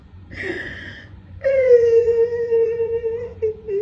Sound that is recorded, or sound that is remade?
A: remade